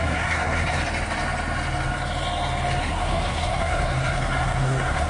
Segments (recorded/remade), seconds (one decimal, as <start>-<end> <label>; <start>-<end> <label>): 0.0-0.8 remade; 0.8-2.8 recorded; 2.8-5.1 remade